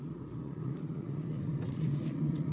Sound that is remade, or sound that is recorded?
remade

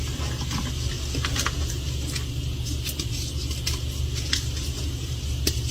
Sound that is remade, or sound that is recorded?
recorded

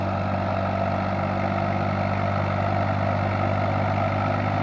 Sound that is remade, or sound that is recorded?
recorded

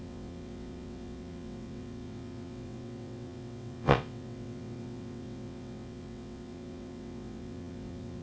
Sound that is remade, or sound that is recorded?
remade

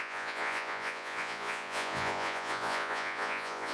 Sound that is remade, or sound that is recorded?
remade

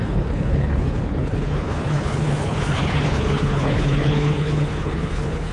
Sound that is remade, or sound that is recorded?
remade